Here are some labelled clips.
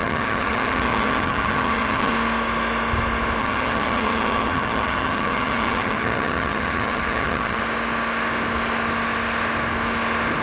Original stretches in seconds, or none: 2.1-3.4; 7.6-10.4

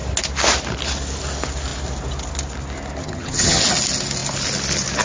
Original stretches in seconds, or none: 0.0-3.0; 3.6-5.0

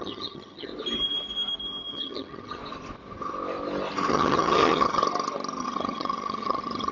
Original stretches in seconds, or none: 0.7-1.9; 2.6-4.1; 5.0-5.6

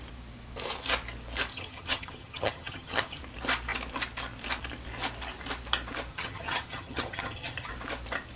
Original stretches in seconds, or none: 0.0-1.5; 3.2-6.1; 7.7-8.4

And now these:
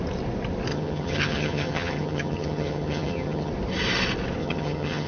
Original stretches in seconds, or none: 0.0-0.7; 3.5-4.4

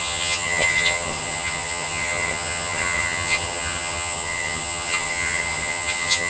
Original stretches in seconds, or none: none